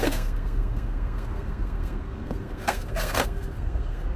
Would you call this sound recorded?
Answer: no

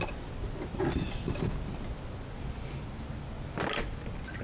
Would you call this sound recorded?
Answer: yes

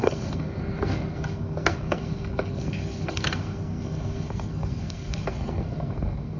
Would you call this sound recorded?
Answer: no